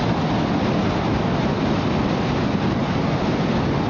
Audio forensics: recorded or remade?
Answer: recorded